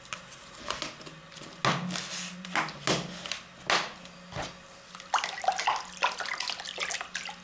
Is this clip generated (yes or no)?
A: no